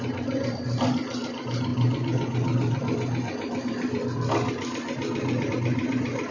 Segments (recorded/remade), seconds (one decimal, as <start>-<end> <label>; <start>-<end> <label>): 0.0-6.3 recorded

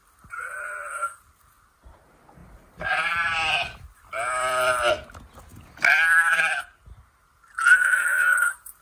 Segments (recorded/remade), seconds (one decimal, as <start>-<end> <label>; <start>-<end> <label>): 0.0-2.4 recorded; 2.4-4.9 remade; 4.9-5.5 recorded; 5.5-6.4 remade; 6.4-8.1 recorded; 8.1-8.8 remade